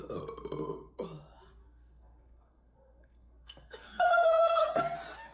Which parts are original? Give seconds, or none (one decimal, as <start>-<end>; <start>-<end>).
0.0-1.6; 4.8-5.3